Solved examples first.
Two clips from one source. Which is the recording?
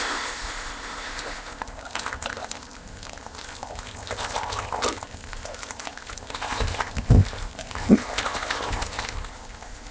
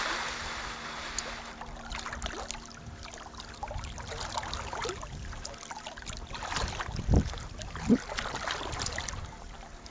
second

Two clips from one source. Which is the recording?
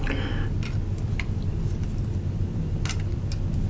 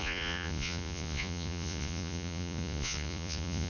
first